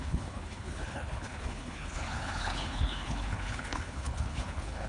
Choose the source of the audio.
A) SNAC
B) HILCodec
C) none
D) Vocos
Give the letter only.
B